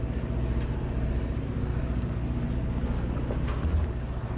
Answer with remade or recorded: recorded